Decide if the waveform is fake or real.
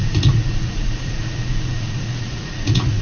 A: fake